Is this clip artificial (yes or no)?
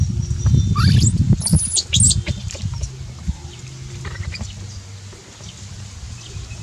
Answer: no